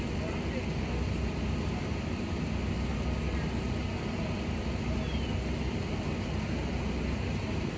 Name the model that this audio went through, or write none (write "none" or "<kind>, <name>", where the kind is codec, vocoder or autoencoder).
none